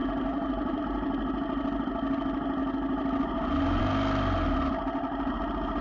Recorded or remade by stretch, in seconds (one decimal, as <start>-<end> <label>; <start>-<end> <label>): 0.0-0.8 remade; 0.8-5.8 recorded